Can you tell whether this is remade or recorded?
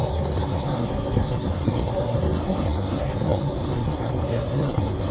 remade